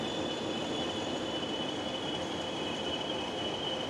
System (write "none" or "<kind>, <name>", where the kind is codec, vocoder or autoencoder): none